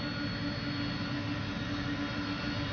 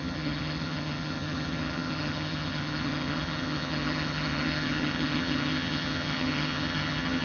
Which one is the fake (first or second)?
second